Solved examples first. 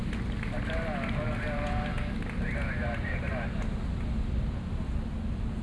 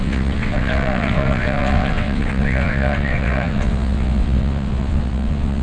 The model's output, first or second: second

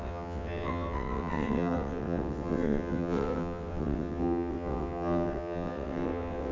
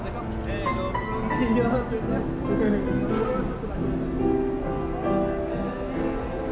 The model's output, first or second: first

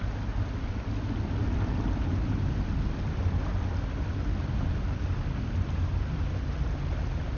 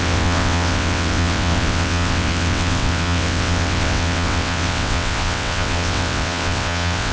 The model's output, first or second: second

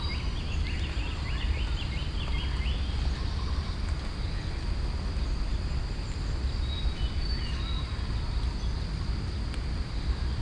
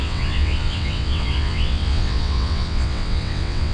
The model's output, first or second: second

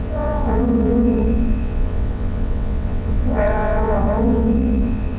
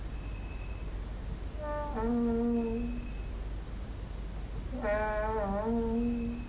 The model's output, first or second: first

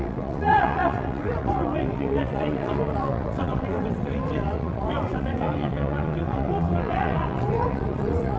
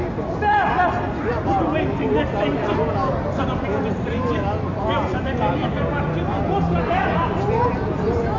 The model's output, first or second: first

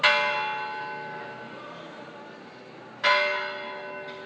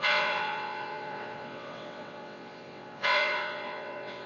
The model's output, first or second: second